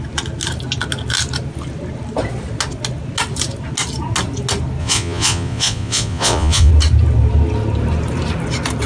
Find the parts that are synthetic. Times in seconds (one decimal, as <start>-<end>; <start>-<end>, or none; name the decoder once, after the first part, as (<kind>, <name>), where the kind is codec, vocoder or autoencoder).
4.8-6.7 (vocoder, Vocos)